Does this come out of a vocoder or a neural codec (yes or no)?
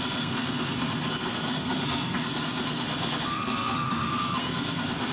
yes